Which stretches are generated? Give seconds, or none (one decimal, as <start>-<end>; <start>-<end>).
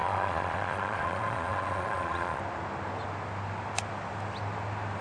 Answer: 0.0-2.4